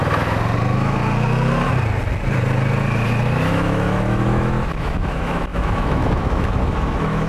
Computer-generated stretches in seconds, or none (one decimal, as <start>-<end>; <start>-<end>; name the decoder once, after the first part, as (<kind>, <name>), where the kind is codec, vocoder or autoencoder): 0.6-1.0 (autoencoder, DAC-VAE); 3.5-7.3

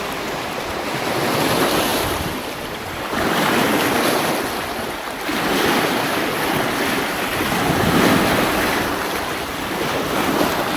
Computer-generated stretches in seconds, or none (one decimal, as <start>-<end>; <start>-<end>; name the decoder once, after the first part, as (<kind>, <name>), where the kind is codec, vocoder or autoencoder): none

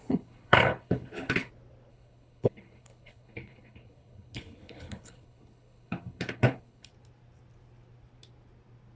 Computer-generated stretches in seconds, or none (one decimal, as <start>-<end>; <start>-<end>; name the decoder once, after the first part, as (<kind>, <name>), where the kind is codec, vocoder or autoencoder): 0.0-1.5 (codec, HILCodec); 1.9-6.9

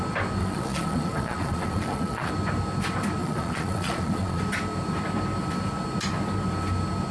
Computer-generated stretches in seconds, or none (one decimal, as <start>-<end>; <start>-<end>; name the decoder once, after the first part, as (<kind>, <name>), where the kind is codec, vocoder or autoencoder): 0.4-2.3 (vocoder, Vocos); 3.2-4.4

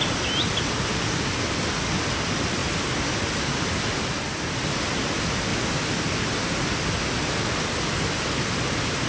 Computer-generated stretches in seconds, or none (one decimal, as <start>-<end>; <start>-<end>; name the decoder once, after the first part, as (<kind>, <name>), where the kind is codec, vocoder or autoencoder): none

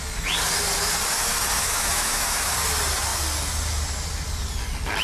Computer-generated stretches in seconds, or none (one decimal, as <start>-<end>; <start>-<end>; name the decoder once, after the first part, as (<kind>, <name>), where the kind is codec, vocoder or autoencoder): 1.6-2.5 (autoencoder, DAC-VAE)

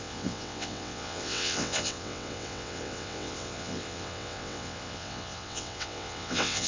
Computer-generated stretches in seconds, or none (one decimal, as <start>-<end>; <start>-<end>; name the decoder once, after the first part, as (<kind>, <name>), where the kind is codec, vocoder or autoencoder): 0.0-6.7 (vocoder, WaveNeXt)

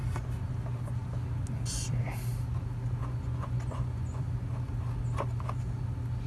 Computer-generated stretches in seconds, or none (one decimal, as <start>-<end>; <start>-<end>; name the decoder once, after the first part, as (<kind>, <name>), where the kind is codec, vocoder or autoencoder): 3.0-4.2 (vocoder, Vocos)